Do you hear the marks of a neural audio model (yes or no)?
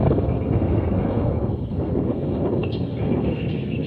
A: yes